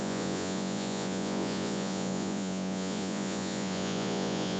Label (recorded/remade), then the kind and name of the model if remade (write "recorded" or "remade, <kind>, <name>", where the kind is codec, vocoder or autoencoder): remade, vocoder, Vocos